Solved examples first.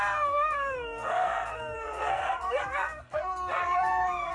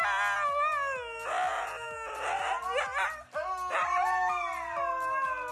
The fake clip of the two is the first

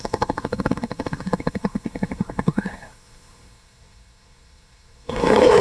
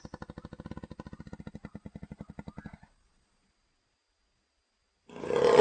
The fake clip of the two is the first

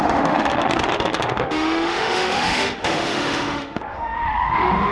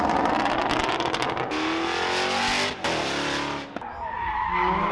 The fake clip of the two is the first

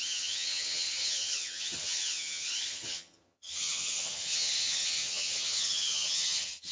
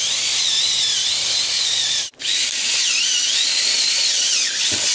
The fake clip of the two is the first